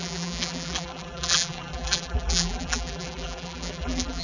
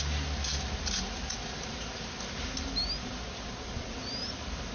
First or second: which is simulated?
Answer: first